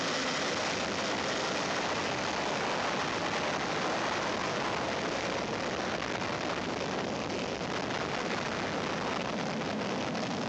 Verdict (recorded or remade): recorded